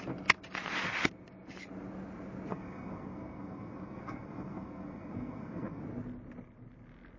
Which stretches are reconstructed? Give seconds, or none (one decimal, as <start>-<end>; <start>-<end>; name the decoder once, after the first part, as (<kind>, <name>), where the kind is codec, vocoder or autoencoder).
2.5-5.8 (codec, SNAC)